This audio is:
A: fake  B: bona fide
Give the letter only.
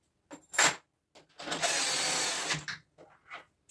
B